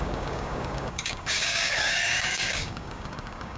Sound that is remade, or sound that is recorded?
remade